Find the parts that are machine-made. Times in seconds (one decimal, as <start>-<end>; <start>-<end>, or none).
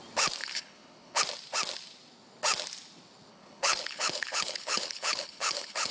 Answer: 0.4-1.2; 3.3-5.9